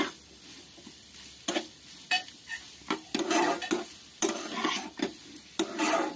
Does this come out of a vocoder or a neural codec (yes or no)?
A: no